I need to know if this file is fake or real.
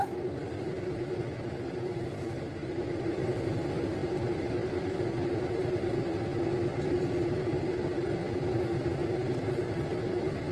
fake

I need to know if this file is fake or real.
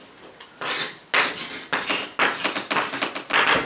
real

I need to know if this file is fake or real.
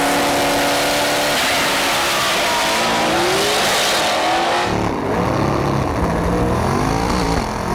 real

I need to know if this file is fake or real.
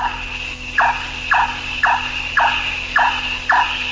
real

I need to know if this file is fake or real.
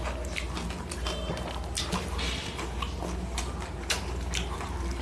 real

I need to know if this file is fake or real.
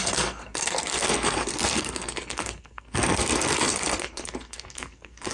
fake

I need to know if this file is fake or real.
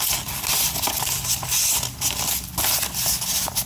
real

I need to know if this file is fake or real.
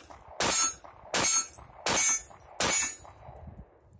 real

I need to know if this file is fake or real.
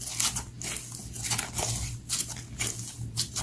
real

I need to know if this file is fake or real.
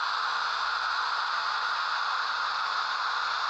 real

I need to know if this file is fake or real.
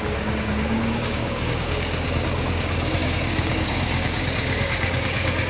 fake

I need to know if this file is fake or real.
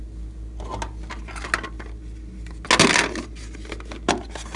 real